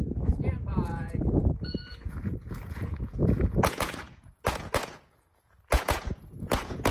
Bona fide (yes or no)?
no